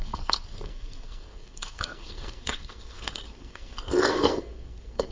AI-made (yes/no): yes